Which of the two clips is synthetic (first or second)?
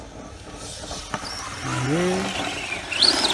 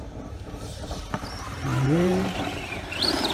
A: second